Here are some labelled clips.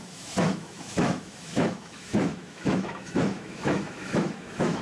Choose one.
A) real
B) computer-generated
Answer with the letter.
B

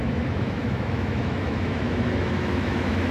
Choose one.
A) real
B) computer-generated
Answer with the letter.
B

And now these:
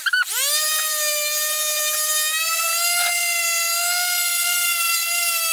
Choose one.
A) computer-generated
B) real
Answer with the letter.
B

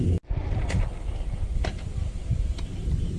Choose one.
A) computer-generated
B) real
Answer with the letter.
B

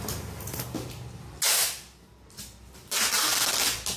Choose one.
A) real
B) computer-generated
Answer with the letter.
A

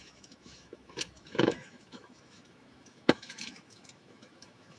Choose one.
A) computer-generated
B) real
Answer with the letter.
A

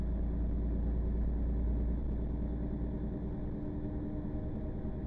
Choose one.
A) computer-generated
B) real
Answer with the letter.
B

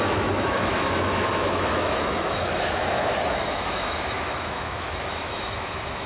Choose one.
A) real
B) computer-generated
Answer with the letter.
B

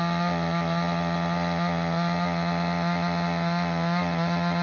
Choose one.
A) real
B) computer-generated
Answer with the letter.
A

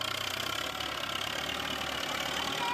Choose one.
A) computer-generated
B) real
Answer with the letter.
B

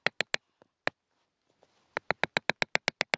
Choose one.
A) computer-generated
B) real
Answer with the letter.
B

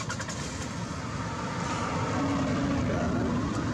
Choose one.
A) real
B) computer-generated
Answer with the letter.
A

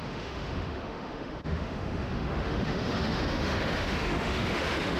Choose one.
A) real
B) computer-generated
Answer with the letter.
B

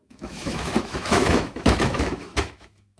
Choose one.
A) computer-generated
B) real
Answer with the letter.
A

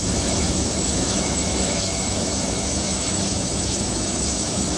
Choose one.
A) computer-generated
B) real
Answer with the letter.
A